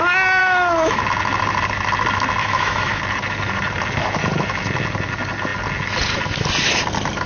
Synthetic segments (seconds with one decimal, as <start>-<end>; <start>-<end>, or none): 0.4-1.0; 2.4-3.0